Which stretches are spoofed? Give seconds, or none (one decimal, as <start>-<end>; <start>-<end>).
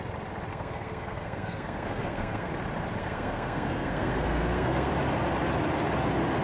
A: 0.5-2.5; 3.0-4.9